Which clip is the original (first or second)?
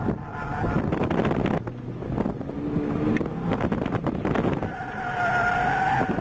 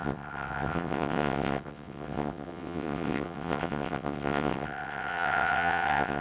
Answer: first